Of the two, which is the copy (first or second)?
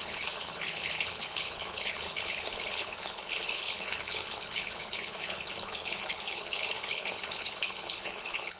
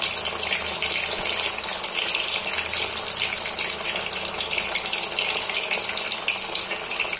first